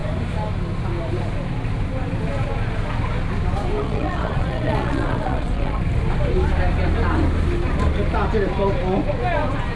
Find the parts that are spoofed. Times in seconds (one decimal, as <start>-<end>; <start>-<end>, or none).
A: 3.8-5.8